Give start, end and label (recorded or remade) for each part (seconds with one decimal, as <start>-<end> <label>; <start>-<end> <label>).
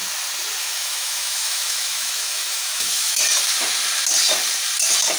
0.0-0.6 recorded; 0.6-3.2 remade; 3.2-5.2 recorded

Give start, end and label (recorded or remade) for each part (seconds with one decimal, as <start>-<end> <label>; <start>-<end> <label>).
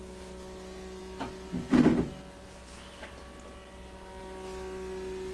0.0-5.3 recorded